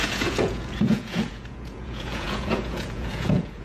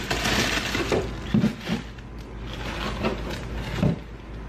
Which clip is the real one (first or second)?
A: second